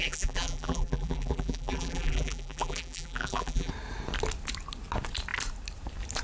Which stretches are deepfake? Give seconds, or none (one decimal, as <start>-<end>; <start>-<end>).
0.0-3.7